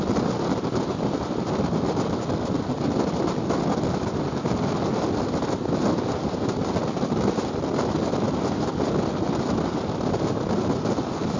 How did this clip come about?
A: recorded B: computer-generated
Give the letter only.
A